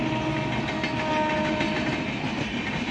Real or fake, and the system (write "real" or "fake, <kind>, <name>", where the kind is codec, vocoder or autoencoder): real